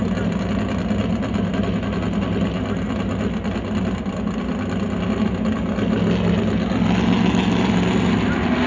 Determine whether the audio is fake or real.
real